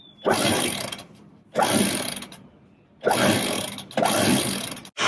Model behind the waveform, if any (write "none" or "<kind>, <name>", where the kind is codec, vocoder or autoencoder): none